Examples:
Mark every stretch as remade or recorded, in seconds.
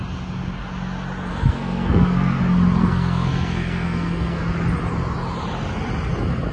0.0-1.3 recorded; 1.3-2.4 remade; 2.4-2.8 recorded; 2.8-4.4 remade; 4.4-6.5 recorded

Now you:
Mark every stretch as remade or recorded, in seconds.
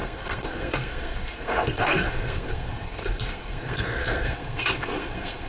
0.0-5.5 remade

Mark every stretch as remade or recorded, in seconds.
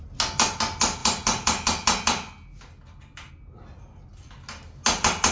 0.0-5.3 recorded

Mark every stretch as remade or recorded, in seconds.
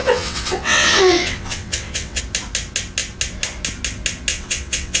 0.0-2.2 remade; 2.2-4.3 recorded; 4.3-5.0 remade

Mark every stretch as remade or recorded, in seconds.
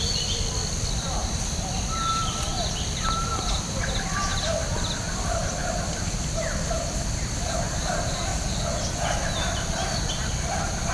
0.0-8.3 remade; 8.3-10.1 recorded; 10.1-10.9 remade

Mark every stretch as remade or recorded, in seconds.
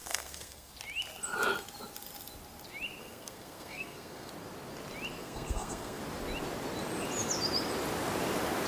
0.0-0.7 remade; 0.7-3.0 recorded; 3.0-4.3 remade; 4.3-5.2 recorded; 5.2-6.0 remade; 6.0-8.7 recorded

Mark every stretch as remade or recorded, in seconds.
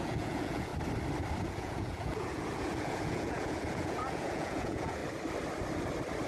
0.0-0.7 remade; 0.7-1.4 recorded; 1.4-5.0 remade; 5.0-6.3 recorded